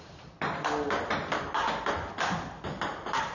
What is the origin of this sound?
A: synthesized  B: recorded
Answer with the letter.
B